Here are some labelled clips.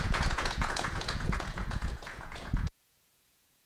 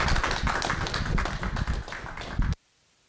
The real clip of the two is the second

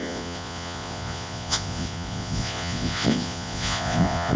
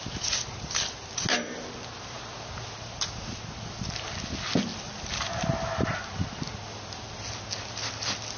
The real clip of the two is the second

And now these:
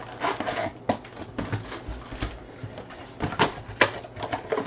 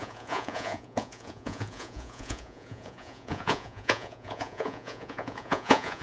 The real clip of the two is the first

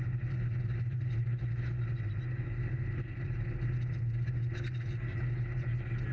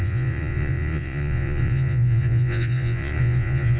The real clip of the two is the first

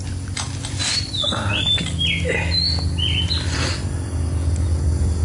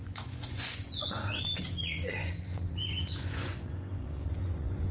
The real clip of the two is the first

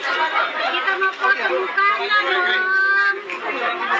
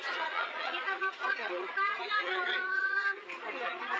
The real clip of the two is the first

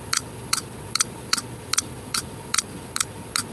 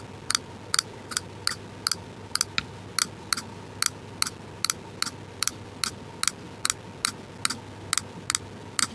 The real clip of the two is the second